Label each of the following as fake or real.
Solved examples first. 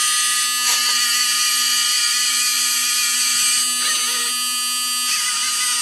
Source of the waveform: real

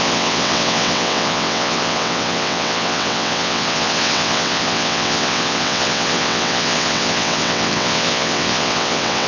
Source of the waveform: fake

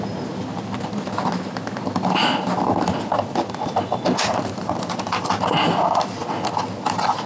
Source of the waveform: real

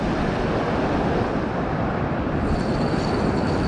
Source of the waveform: real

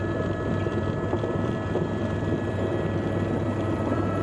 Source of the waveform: fake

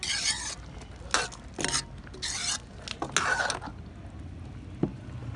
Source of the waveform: real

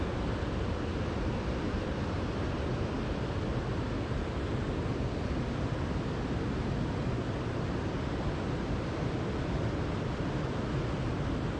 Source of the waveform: real